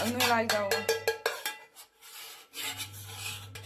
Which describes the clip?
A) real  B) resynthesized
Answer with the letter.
A